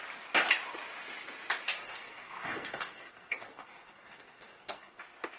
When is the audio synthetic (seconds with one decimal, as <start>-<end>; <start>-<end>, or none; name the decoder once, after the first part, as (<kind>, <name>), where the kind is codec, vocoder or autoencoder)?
1.8-5.0 (codec, SNAC)